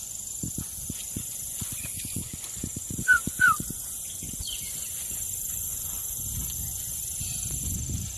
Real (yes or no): no